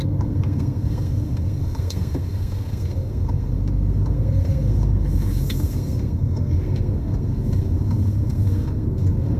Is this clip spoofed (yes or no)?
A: yes